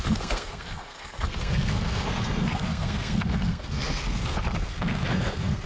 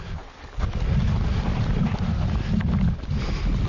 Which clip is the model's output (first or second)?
first